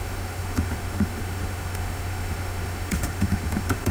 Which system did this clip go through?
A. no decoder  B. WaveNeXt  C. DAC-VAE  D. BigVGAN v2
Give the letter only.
C